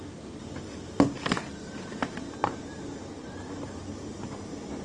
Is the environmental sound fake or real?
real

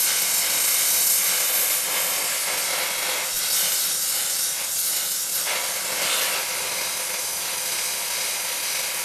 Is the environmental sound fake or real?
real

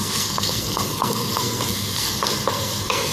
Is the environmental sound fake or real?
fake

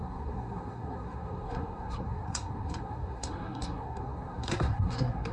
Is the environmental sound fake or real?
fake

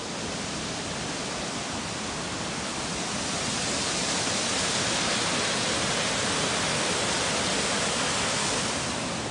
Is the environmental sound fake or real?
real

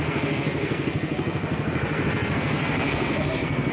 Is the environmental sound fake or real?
fake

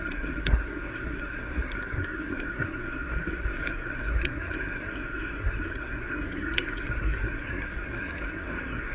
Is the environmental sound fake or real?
fake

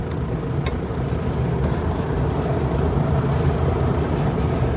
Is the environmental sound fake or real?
real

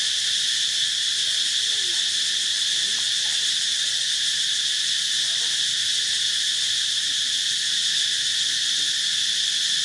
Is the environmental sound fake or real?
real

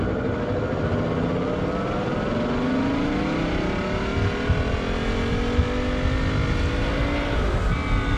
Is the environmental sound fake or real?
real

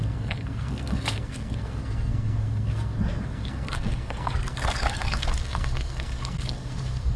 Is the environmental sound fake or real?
fake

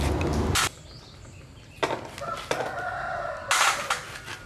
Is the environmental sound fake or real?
real